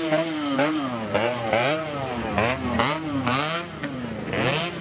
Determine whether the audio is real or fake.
fake